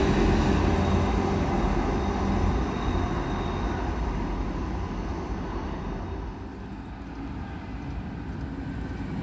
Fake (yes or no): no